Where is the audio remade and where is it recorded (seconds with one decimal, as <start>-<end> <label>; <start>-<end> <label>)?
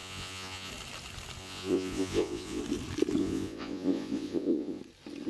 0.0-0.7 remade; 0.7-1.4 recorded; 1.4-2.6 remade; 2.6-3.2 recorded; 3.2-4.8 remade; 4.8-5.3 recorded